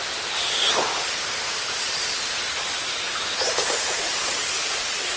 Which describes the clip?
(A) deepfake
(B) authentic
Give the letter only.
A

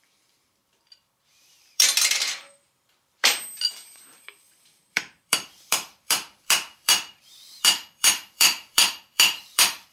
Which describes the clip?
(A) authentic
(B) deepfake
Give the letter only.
B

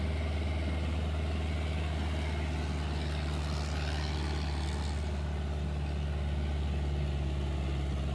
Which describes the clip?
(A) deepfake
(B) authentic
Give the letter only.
B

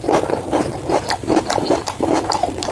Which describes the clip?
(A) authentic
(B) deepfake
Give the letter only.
B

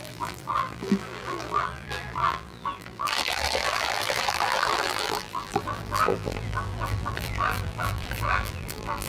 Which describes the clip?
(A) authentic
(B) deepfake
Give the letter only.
B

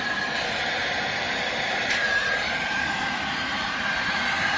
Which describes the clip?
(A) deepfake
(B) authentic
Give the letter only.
A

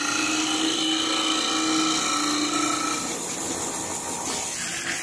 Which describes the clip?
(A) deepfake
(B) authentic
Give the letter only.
B